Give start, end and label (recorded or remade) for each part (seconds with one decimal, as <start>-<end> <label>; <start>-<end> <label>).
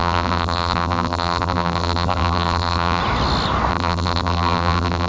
0.0-3.0 remade; 3.0-3.7 recorded; 3.7-5.1 remade